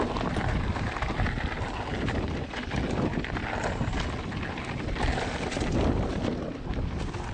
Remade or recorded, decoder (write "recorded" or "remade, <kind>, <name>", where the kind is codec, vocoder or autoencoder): recorded